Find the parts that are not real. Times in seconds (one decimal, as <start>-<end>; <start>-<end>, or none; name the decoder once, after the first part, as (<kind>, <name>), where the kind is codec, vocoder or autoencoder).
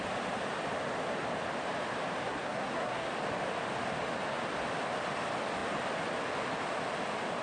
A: 2.2-3.1 (codec, SNAC)